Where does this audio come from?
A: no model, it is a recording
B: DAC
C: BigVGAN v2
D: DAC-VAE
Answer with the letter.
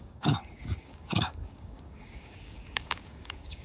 B